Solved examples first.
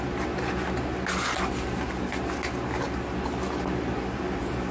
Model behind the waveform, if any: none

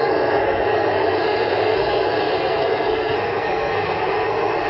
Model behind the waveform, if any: codec, SNAC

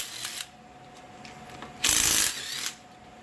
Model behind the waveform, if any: none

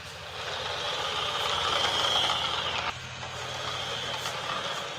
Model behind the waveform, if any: none